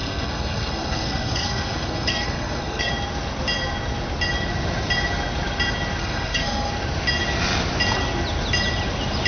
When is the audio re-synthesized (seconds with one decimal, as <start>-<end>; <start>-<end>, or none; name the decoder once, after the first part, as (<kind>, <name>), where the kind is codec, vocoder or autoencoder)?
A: 0.0-2.9 (codec, SNAC); 6.0-6.7